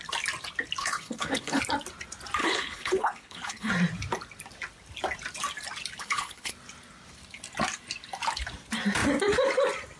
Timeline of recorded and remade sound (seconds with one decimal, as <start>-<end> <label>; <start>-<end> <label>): 0.0-0.8 recorded; 0.8-1.6 remade; 1.6-2.4 recorded; 2.4-3.7 remade; 3.7-6.0 recorded; 6.0-6.5 remade; 6.5-10.0 recorded

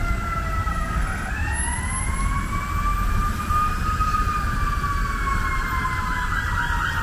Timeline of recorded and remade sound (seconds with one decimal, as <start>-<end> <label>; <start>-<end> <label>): 0.0-0.7 recorded; 0.7-1.3 remade; 1.3-7.0 recorded

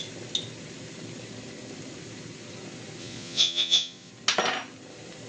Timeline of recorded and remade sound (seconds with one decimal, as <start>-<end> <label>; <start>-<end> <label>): 0.0-3.0 recorded; 3.0-4.1 remade; 4.1-5.3 recorded

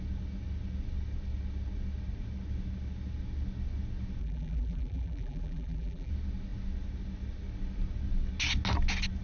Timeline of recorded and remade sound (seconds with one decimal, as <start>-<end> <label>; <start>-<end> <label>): 0.0-4.2 recorded; 4.2-6.1 remade; 6.1-9.2 recorded

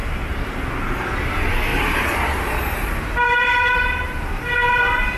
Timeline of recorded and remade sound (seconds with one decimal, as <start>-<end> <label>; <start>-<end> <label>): 0.0-0.6 remade; 0.6-1.7 recorded; 1.7-4.8 remade; 4.8-5.2 recorded

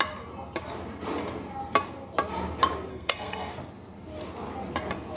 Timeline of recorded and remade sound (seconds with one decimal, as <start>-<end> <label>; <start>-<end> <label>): 0.0-2.9 recorded; 2.9-3.5 remade; 3.5-5.2 recorded